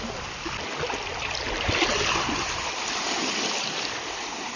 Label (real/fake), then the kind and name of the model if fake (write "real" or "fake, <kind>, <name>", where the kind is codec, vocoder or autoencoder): real